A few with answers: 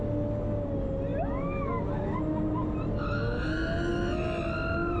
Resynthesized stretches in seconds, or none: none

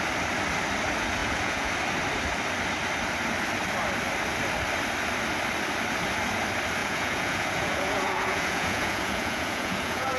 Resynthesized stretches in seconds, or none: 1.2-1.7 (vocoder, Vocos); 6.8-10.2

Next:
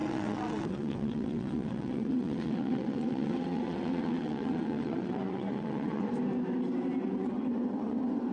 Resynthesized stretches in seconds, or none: 0.0-6.1 (vocoder, WaveNeXt); 7.0-8.3